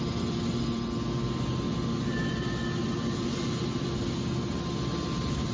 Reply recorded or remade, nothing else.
recorded